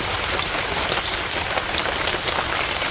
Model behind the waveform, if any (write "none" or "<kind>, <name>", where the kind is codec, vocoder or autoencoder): vocoder, BigVGAN v2